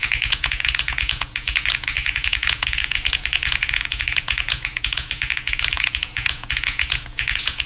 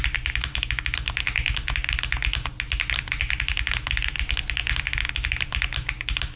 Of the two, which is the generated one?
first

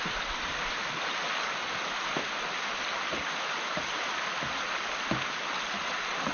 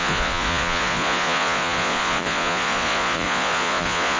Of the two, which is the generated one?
second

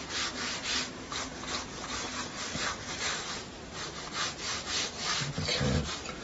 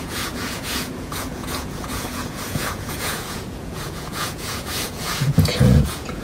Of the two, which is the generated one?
second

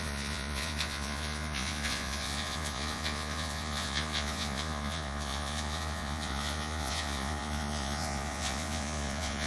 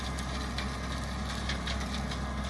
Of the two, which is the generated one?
first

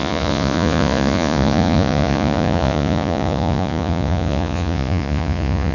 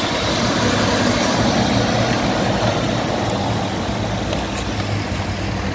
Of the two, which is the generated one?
first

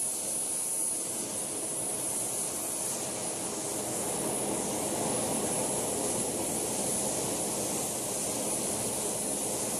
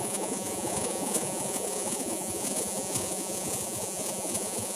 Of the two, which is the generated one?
second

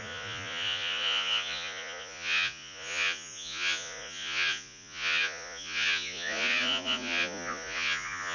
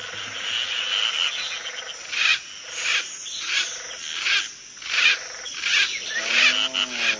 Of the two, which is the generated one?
first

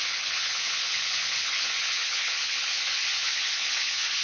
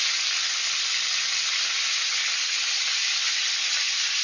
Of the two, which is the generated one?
first